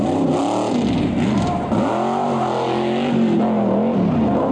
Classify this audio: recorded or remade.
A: recorded